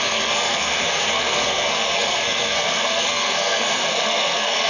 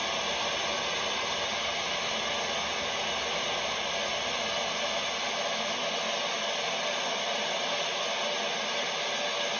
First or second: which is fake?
first